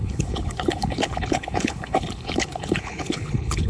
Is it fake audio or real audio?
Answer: fake